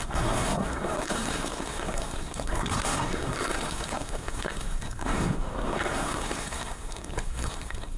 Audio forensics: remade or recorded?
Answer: remade